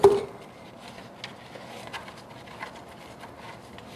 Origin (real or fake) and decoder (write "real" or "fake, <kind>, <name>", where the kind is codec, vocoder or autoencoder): real